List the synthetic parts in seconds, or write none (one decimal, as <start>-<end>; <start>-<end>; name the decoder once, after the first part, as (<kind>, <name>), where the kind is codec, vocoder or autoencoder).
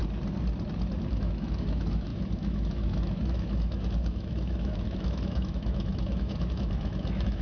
1.1-7.4 (autoencoder, DAC-VAE)